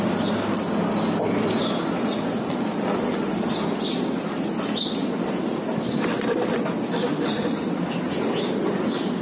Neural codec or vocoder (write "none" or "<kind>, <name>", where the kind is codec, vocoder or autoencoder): none